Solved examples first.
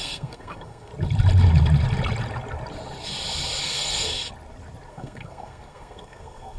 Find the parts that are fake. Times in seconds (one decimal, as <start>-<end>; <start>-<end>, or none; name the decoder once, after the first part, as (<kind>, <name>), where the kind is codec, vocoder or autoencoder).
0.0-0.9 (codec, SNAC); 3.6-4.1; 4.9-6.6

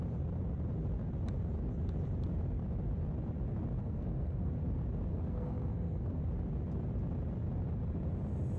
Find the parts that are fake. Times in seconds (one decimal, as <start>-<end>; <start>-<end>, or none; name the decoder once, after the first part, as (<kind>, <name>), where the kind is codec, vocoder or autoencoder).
3.8-4.5 (codec, SNAC); 5.1-6.2

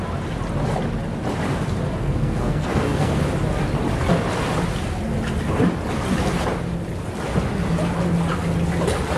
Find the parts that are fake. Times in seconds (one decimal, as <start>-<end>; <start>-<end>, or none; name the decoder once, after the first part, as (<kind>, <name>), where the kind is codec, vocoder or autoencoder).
2.0-3.2 (codec, SNAC)

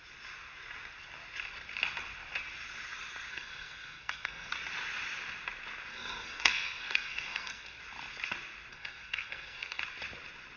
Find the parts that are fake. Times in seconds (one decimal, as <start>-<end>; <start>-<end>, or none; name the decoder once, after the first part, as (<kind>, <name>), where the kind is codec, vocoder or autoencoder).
3.3-4.5 (codec, SNAC); 5.9-7.8; 8.7-9.8